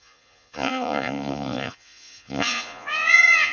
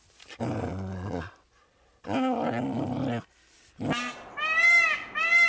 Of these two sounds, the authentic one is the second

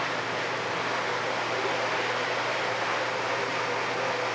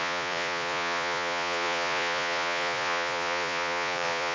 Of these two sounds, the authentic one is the first